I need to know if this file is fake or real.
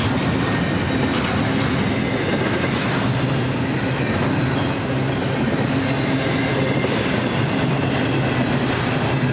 real